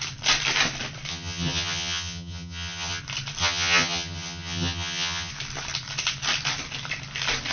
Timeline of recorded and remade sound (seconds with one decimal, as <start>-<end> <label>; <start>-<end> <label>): 0.0-1.1 recorded; 1.1-3.0 remade; 3.0-3.4 recorded; 3.4-5.3 remade; 5.3-7.5 recorded